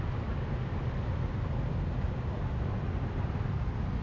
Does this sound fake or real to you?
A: real